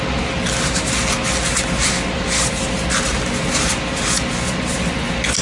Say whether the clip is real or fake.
real